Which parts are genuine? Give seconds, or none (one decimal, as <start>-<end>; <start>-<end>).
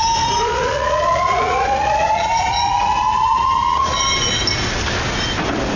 0.0-0.5; 4.0-5.8